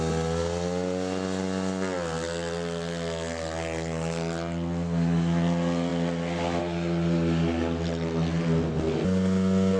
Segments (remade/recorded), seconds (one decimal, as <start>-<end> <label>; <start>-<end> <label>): 0.0-9.8 recorded